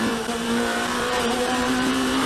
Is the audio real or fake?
fake